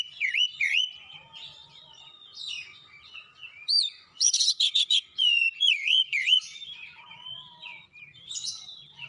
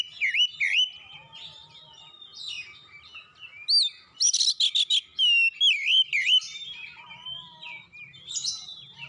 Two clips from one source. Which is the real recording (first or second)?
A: second